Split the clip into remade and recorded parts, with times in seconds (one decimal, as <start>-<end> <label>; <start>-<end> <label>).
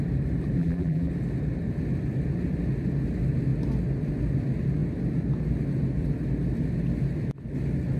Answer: 0.0-0.6 recorded; 0.6-1.1 remade; 1.1-8.0 recorded